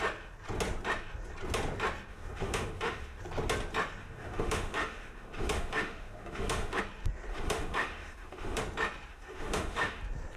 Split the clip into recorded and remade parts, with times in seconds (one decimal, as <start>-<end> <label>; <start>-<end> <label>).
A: 0.0-2.1 recorded; 2.1-3.2 remade; 3.2-4.0 recorded; 4.0-6.8 remade; 6.8-7.3 recorded; 7.3-8.6 remade; 8.6-9.1 recorded; 9.1-10.0 remade; 10.0-10.4 recorded